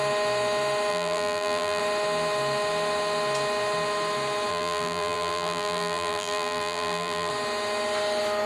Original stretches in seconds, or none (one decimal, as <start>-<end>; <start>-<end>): 0.0-0.9; 1.8-4.5; 7.3-8.5